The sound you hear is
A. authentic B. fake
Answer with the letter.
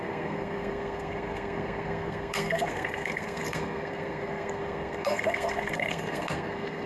B